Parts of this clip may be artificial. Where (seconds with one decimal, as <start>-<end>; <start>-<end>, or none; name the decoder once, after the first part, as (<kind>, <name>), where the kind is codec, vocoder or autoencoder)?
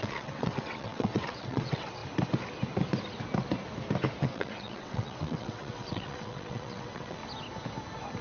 0.0-2.0 (vocoder, WaveNeXt); 4.2-7.2